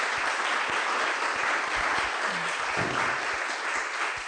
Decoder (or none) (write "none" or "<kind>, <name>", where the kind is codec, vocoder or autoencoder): none